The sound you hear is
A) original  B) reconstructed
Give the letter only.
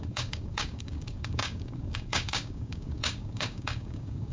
B